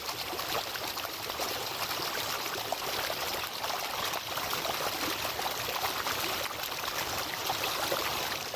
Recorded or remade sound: remade